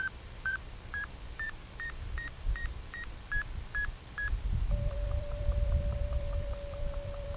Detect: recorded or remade remade